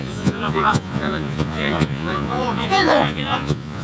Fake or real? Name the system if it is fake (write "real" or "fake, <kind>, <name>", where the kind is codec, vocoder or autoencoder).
fake, vocoder, Vocos